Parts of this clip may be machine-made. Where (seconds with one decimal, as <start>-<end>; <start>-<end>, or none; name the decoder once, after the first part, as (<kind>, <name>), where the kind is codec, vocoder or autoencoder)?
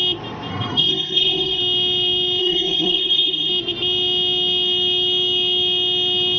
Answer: 0.5-1.6 (codec, SNAC); 2.4-3.5